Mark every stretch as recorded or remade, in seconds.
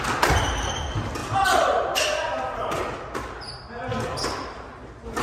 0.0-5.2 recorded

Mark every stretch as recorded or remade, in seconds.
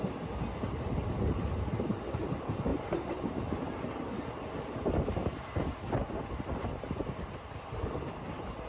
0.0-8.7 recorded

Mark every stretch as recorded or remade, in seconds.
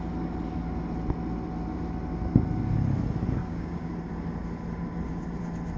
0.0-3.4 recorded; 3.4-3.9 remade; 3.9-5.8 recorded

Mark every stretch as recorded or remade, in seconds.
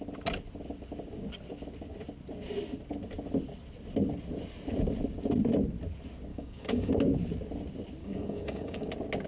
0.0-6.3 recorded; 6.3-6.9 remade; 6.9-8.0 recorded; 8.0-8.9 remade; 8.9-9.3 recorded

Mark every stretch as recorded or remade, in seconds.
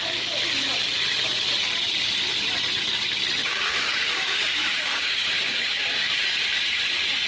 0.0-3.4 recorded; 3.4-6.1 remade; 6.1-7.3 recorded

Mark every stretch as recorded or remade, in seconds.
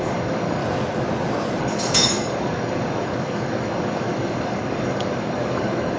0.0-0.6 remade; 0.6-1.6 recorded; 1.6-6.0 remade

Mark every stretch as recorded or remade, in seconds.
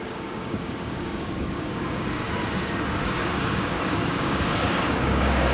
0.0-2.2 remade; 2.2-3.2 recorded; 3.2-5.5 remade